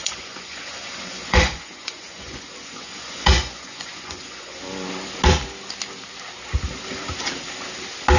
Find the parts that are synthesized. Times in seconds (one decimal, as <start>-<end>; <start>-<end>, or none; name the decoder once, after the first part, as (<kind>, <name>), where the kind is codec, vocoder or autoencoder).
0.0-4.6 (vocoder, Vocos)